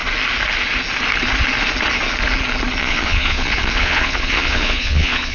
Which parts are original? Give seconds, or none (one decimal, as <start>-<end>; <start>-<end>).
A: 0.0-2.8